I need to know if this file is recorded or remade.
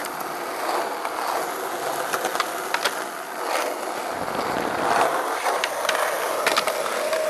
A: recorded